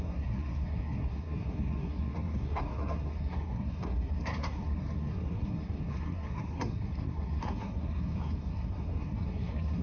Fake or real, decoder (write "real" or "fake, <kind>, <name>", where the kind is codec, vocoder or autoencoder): fake, codec, SNAC